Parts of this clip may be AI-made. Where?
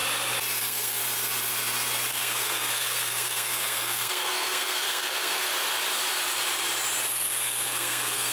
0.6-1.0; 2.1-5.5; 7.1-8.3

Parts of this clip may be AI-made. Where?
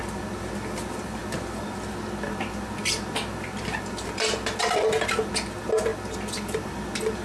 none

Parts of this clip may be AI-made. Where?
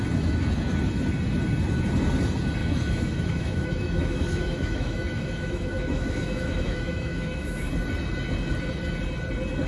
2.6-7.7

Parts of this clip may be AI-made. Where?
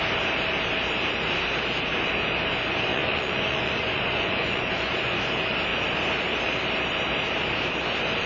2.9-5.3